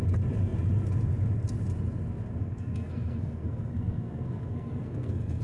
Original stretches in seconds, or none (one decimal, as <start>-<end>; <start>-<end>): 0.0-2.4